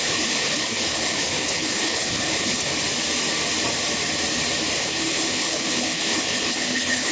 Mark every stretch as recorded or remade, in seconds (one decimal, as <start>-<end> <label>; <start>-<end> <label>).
0.0-2.7 remade; 2.7-4.7 recorded; 4.7-7.1 remade